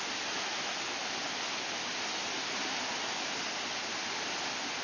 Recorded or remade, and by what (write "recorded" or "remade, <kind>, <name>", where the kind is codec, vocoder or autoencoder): recorded